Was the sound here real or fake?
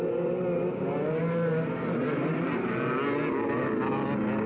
real